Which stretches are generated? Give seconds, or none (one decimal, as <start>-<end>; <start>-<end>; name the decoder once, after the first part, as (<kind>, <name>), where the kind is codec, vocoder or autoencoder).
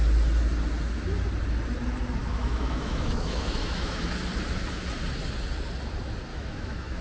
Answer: 2.2-4.0 (autoencoder, DAC-VAE); 6.3-7.0